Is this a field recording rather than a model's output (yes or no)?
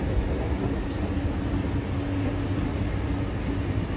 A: yes